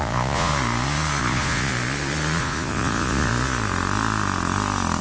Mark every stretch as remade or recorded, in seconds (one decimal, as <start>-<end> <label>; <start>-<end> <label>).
0.0-0.5 remade; 0.5-1.2 recorded; 1.2-1.7 remade; 1.7-2.4 recorded; 2.4-3.3 remade; 3.3-5.0 recorded